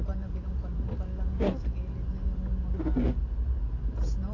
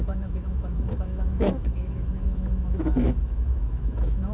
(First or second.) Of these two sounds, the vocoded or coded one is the second